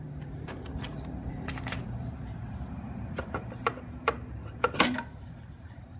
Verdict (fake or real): fake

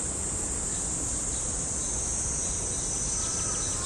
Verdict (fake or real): real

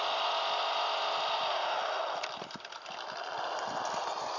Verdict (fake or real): fake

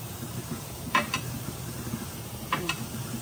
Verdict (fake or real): fake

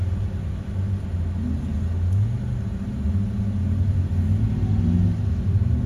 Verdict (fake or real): real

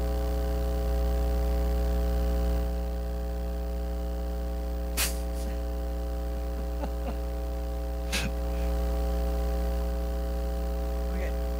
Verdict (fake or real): real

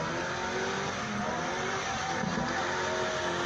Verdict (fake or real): real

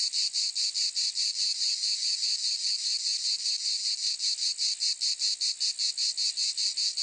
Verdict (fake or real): real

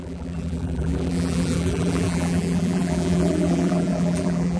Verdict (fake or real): fake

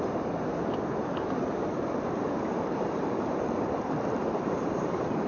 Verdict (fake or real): fake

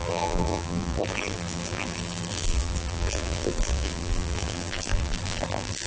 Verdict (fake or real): fake